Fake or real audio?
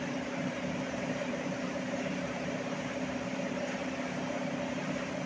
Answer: fake